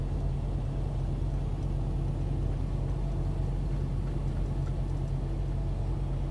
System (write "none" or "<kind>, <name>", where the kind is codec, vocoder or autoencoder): none